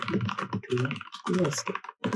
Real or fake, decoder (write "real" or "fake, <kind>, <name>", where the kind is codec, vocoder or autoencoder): real